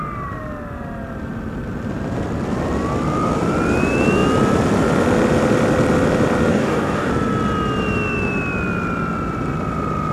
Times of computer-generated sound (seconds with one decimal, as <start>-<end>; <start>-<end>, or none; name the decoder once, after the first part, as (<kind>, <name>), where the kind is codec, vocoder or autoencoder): 6.5-7.1 (codec, DAC)